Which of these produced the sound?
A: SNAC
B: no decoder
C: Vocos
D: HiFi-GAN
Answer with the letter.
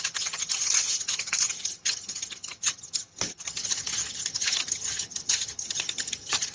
D